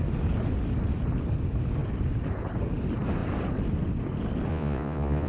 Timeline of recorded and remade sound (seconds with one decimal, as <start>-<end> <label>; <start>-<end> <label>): 0.0-4.5 recorded; 4.5-5.3 remade